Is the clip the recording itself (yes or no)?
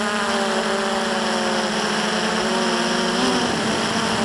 yes